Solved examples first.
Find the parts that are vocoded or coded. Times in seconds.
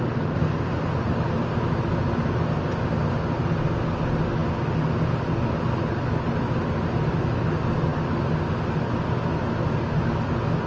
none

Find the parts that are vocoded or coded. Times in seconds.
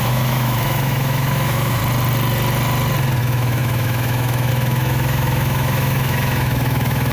0.0-1.8; 3.2-7.1